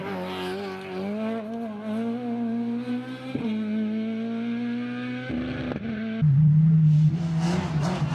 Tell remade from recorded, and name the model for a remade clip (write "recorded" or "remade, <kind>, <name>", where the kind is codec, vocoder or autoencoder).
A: recorded